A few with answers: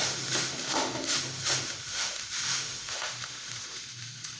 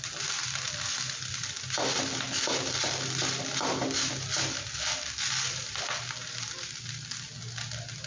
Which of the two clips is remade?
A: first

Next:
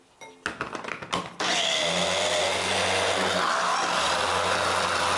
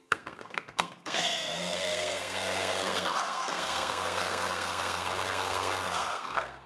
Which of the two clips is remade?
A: second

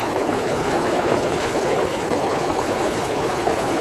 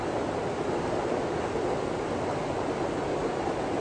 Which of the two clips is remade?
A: first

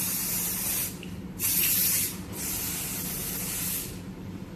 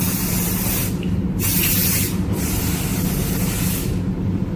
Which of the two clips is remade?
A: first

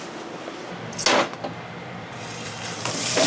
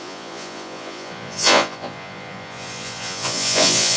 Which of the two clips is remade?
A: second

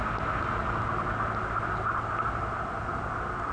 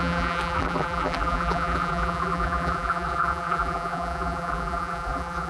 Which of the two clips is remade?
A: second